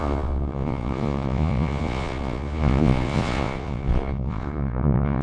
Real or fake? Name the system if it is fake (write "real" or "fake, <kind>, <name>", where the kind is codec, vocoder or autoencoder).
fake, vocoder, Vocos